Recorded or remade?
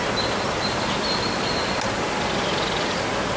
recorded